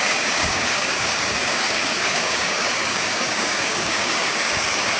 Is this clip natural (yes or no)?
no